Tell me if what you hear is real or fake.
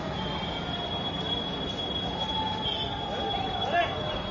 real